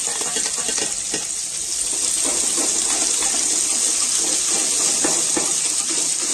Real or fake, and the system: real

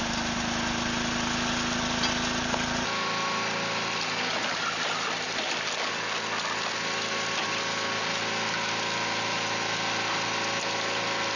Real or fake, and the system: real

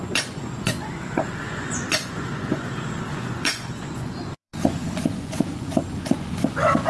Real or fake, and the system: fake, vocoder, Vocos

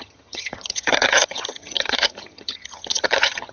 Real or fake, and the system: fake, vocoder, HiFi-GAN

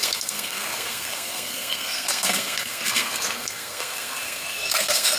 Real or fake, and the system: fake, codec, SNAC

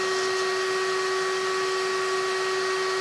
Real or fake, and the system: real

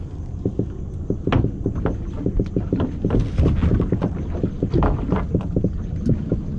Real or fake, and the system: real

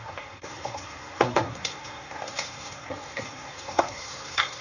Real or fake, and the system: fake, codec, SNAC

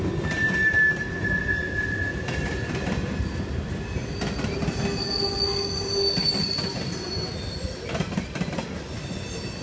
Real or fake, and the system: real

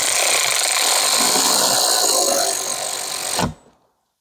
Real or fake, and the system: real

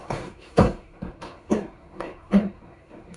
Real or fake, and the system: fake, codec, SNAC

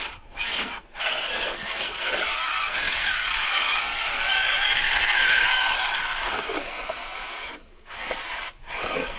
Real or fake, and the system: fake, codec, SNAC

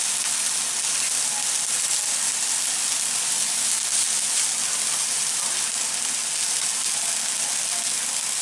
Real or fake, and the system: real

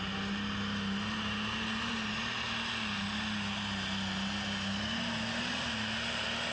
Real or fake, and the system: real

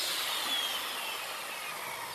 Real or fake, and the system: real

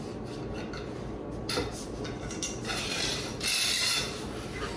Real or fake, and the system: real